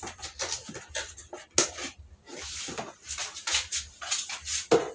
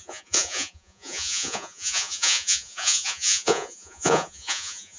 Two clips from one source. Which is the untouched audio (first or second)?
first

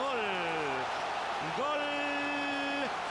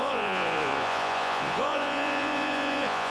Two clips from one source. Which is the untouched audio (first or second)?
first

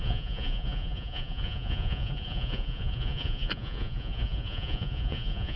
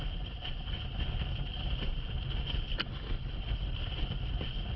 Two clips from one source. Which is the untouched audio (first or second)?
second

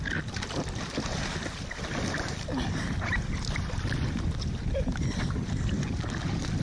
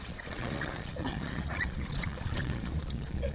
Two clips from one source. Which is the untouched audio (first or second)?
first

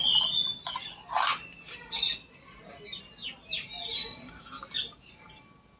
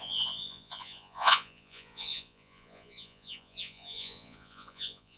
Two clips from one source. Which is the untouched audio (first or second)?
first